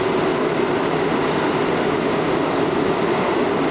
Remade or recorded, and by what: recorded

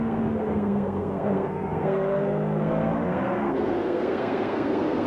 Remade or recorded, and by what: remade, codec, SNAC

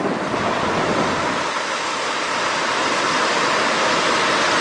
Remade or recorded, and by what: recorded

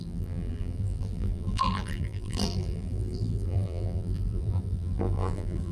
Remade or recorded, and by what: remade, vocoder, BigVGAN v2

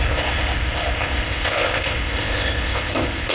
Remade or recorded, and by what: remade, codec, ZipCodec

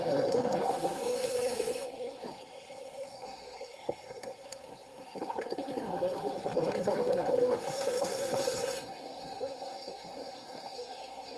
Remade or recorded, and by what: remade, codec, SNAC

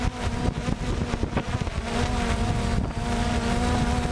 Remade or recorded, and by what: recorded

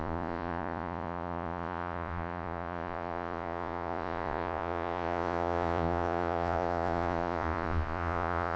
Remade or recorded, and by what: remade, vocoder, Vocos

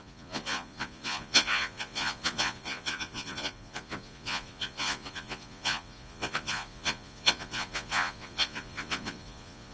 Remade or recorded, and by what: remade, vocoder, Vocos